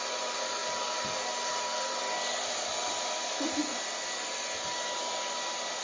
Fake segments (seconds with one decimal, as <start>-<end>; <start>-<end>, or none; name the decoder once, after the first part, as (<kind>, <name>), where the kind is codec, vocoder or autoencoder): none